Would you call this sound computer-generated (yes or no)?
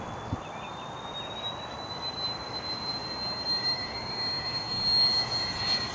no